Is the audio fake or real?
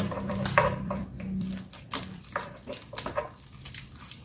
fake